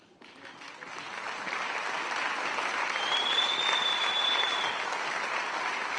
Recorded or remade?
recorded